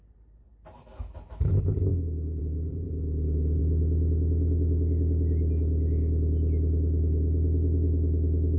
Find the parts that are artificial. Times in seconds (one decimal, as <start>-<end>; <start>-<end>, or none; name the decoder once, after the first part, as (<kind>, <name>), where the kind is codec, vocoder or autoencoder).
0.0-0.5 (vocoder, BigVGAN v2); 1.5-1.9; 2.4-3.6